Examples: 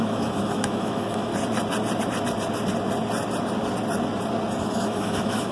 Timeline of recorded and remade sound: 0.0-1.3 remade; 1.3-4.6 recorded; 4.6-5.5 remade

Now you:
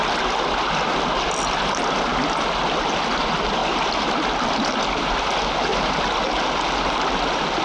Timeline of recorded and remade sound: 0.0-0.9 remade; 0.9-3.6 recorded; 3.6-5.2 remade; 5.2-7.6 recorded